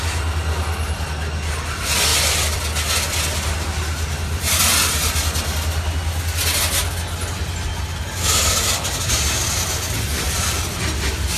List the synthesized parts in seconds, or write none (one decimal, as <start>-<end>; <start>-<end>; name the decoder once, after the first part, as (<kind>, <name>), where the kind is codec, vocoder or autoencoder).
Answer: 2.1-2.6 (vocoder, BigVGAN v2)